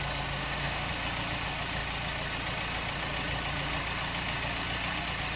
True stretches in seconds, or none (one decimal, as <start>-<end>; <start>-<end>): 0.0-0.4; 0.9-5.4